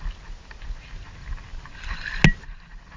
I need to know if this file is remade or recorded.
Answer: recorded